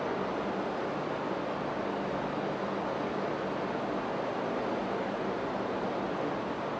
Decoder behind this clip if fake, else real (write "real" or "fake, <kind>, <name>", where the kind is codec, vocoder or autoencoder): real